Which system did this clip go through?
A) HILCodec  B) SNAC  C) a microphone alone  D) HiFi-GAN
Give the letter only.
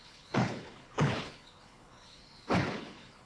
A